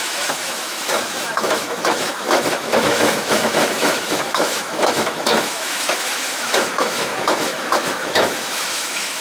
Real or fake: fake